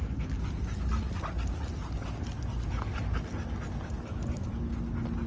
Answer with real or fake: real